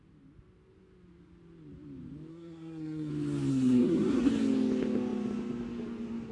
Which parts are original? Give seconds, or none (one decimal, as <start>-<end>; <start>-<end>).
0.0-2.3; 3.1-3.5; 4.3-6.3